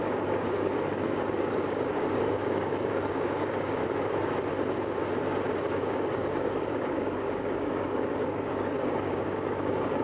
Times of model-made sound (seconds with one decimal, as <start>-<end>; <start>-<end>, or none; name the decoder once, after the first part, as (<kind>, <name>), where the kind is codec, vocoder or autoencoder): 0.0-3.8 (codec, DAC); 5.6-10.0

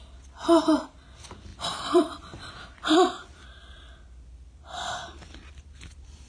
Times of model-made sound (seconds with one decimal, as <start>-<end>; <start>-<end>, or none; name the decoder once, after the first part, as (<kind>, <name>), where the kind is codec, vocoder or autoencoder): 1.5-2.5 (vocoder, BigVGAN v2)

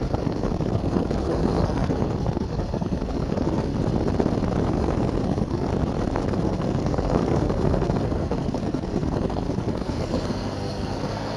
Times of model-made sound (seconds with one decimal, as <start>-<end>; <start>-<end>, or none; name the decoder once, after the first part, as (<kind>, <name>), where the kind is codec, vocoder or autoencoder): 0.0-3.7 (codec, SNAC); 4.6-5.7; 6.3-11.4